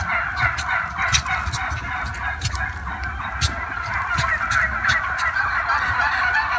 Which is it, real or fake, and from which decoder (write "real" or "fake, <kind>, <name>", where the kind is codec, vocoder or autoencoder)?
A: real